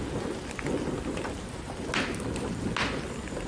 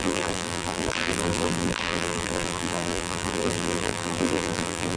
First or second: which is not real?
second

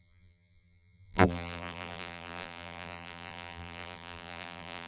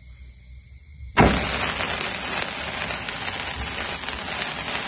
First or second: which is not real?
first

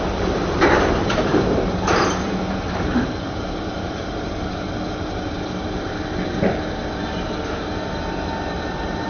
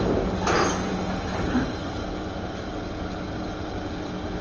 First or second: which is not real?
first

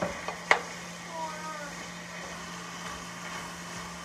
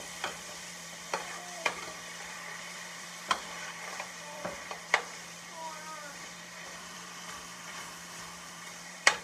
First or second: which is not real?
second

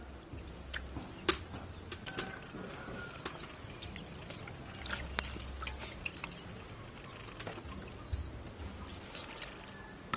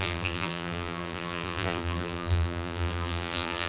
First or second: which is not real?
second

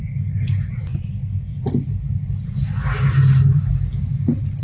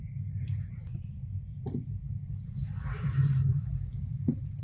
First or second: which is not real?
second